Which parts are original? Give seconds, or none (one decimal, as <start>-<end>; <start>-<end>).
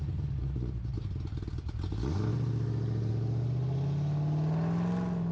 0.0-0.4; 1.0-2.3; 3.1-5.3